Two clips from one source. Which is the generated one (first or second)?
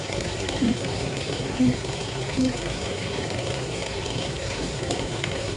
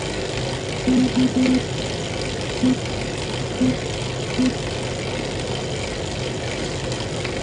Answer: first